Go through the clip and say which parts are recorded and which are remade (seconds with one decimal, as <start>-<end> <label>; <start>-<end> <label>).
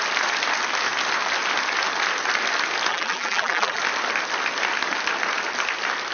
0.0-2.9 recorded; 2.9-3.8 remade; 3.8-6.1 recorded